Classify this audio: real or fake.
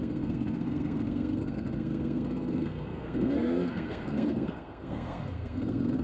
fake